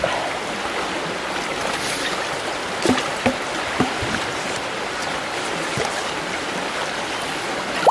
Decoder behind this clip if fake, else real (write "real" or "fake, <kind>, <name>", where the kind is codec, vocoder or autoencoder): real